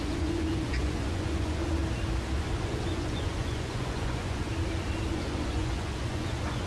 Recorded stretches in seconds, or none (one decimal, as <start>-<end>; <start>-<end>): 1.8-2.4; 4.5-5.1